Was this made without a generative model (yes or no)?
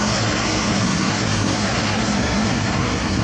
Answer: no